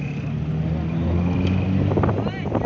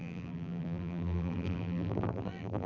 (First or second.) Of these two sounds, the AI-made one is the second